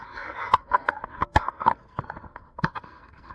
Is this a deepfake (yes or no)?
yes